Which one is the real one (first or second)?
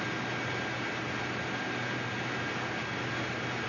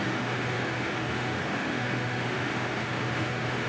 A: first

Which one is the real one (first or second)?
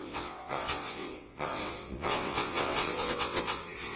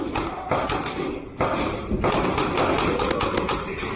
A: second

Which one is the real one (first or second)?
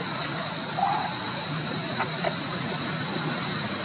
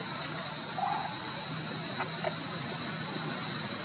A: second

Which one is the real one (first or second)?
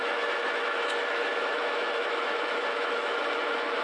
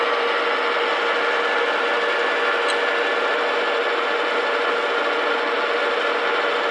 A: second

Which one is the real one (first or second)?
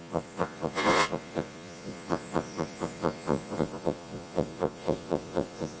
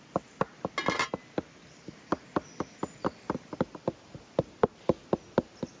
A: second